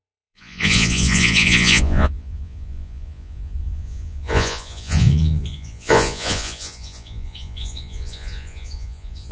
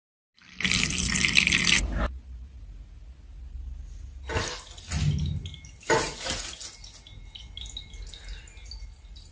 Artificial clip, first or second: first